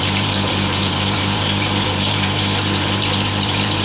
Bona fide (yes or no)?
no